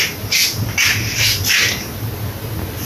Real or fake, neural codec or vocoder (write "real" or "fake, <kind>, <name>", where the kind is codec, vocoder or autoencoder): real